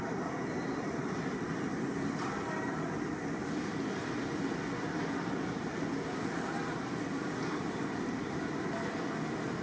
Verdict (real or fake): real